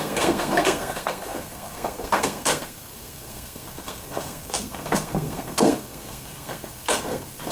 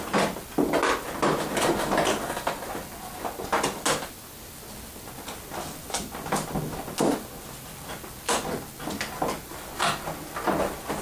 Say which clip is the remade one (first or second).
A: first